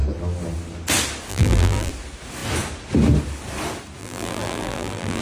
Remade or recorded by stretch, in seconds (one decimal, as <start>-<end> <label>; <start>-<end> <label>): 0.0-1.3 recorded; 1.3-1.9 remade; 1.9-4.0 recorded; 4.0-5.2 remade